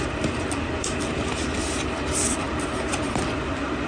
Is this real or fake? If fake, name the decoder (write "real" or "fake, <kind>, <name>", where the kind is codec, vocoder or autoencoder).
fake, vocoder, BigVGAN v2